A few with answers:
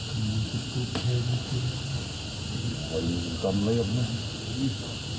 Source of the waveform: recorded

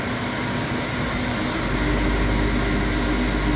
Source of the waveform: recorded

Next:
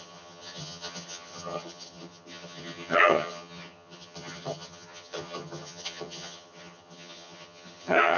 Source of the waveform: remade